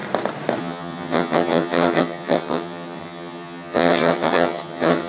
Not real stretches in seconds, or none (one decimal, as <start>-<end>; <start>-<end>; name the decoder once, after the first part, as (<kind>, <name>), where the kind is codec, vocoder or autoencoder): 0.6-5.1 (vocoder, HiFi-GAN)